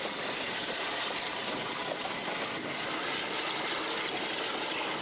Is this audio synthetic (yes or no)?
no